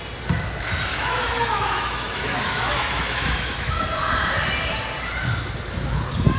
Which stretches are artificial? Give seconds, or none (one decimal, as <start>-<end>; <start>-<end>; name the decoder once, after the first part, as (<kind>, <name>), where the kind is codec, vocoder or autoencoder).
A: 0.9-3.8 (autoencoder, DAC-VAE)